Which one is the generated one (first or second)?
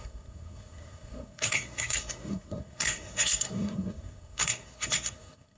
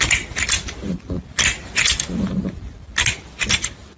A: first